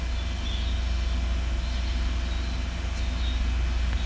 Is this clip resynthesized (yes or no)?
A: no